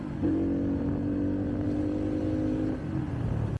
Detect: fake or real real